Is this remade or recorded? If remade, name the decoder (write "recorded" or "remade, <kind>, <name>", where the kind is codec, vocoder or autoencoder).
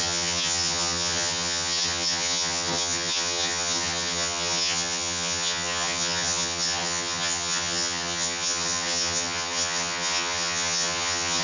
remade, vocoder, HiFi-GAN